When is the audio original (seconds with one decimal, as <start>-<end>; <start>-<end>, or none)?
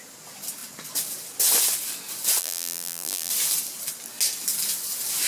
0.0-2.4; 3.3-5.3